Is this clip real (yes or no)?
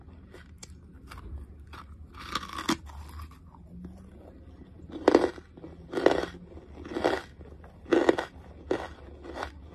yes